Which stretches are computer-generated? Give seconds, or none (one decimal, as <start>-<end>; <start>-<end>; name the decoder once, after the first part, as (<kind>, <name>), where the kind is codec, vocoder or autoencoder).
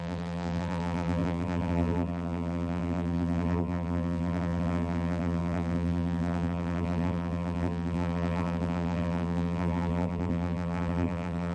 0.0-11.5 (vocoder, BigVGAN v2)